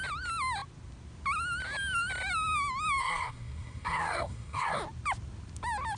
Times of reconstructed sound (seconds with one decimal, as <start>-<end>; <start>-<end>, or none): 3.0-4.8